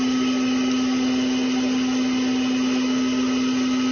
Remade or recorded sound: recorded